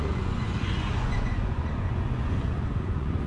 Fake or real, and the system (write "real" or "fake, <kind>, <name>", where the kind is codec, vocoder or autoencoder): fake, vocoder, Vocos